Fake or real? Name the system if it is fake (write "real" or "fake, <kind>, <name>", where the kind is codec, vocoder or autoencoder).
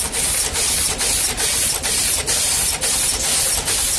real